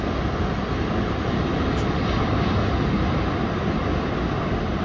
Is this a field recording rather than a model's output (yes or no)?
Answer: yes